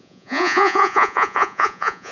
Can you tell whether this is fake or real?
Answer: fake